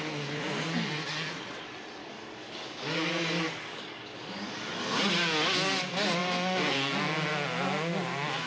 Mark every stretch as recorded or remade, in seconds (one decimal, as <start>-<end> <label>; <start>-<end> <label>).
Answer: 0.0-2.0 recorded; 2.0-4.7 remade; 4.7-8.5 recorded